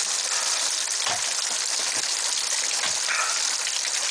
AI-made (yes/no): no